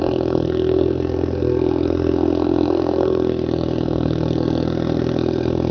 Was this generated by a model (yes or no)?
yes